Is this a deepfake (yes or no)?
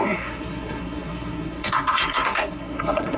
yes